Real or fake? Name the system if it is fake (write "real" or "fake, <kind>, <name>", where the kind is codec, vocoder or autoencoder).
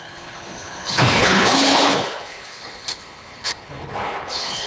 fake, codec, HILCodec